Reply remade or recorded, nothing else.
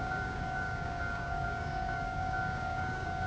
remade